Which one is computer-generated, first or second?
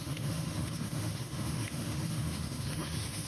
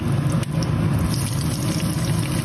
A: first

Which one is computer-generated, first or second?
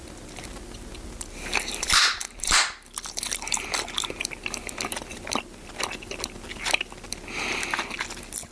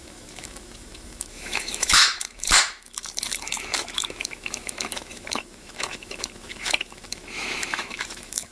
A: second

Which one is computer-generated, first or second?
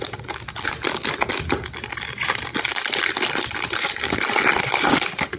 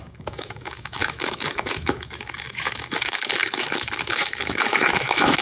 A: second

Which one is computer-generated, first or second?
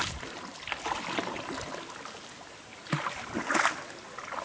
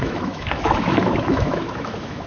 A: second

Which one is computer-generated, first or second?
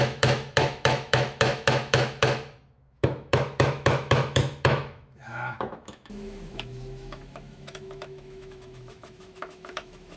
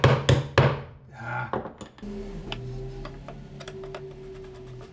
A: first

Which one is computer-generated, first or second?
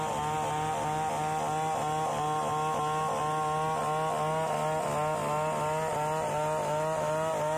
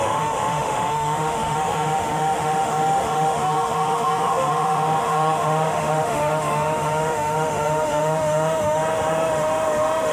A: second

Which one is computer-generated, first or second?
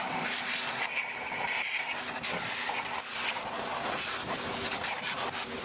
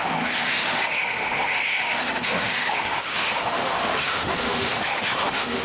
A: second